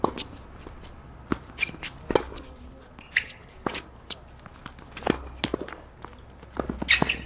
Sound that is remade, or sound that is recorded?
recorded